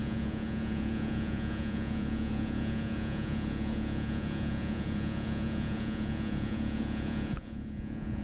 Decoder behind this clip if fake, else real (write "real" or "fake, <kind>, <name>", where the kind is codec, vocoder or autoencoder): fake, vocoder, Vocos